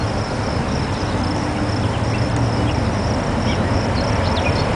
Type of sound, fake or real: real